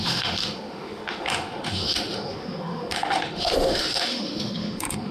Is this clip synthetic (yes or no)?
yes